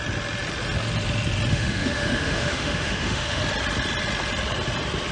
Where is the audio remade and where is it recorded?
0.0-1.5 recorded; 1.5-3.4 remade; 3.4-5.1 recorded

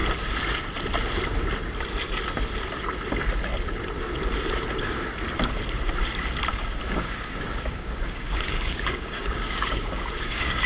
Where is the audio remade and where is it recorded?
0.0-6.5 recorded; 6.5-10.7 remade

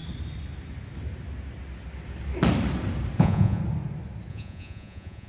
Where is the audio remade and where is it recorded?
0.0-3.2 recorded; 3.2-3.6 remade; 3.6-4.3 recorded; 4.3-5.3 remade

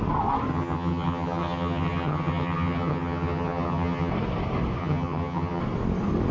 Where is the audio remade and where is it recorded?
0.0-0.5 recorded; 0.5-4.1 remade; 4.1-4.8 recorded; 4.8-5.6 remade; 5.6-6.3 recorded